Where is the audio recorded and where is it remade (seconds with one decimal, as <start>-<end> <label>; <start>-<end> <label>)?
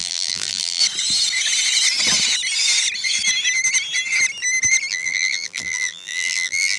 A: 0.0-0.8 remade; 0.8-4.9 recorded; 4.9-6.8 remade